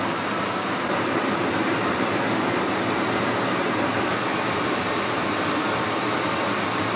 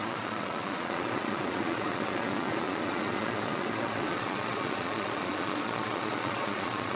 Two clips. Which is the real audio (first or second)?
first